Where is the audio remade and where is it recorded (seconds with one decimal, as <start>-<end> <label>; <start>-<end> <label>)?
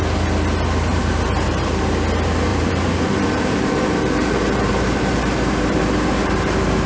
0.0-0.9 recorded; 0.9-1.9 remade; 1.9-2.5 recorded; 2.5-5.8 remade; 5.8-6.2 recorded; 6.2-6.9 remade